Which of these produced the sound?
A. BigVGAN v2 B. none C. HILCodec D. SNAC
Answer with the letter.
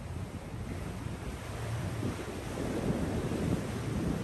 B